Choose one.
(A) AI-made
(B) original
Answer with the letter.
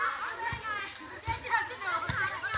B